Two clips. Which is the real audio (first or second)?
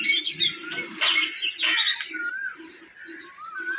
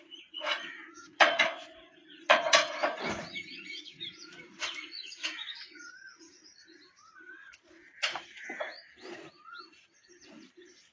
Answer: first